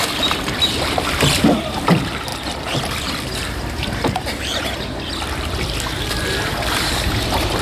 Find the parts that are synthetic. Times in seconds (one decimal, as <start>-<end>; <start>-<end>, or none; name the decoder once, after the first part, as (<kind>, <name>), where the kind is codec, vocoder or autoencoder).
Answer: 0.0-7.6 (vocoder, BigVGAN v2)